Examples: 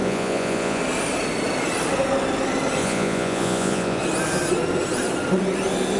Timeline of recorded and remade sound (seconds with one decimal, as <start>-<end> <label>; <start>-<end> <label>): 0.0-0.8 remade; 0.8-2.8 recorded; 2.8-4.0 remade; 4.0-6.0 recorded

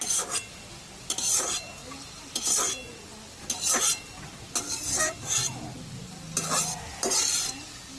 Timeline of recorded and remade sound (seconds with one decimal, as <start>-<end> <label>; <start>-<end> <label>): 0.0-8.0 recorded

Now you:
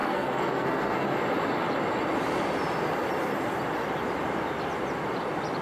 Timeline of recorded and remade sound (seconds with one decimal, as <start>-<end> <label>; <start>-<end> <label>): 0.0-1.2 remade; 1.2-5.6 recorded

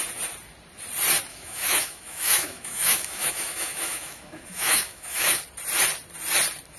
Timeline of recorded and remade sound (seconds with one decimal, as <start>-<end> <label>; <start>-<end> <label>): 0.0-1.3 recorded; 1.3-5.4 remade; 5.4-6.8 recorded

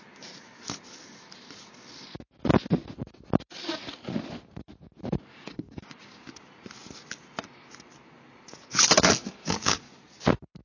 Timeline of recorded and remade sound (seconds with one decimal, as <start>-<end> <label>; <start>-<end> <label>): 0.0-5.3 recorded; 5.3-6.3 remade; 6.3-9.4 recorded; 9.4-9.9 remade; 9.9-10.6 recorded

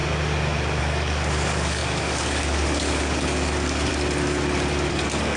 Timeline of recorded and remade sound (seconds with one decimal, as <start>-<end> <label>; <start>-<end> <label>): 0.0-0.8 recorded; 0.8-3.9 remade; 3.9-4.9 recorded; 4.9-5.4 remade

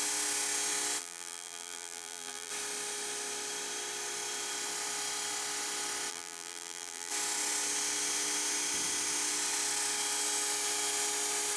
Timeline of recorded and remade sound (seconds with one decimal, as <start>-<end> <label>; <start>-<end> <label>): 0.0-1.0 recorded; 1.0-2.5 remade; 2.5-6.1 recorded; 6.1-7.1 remade; 7.1-11.6 recorded